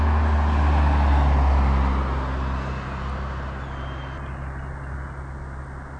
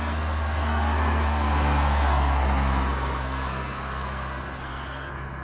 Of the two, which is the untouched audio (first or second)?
first